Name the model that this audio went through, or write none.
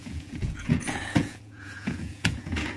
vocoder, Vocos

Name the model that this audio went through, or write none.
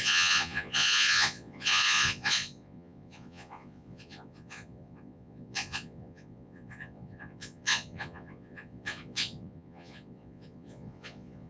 vocoder, Vocos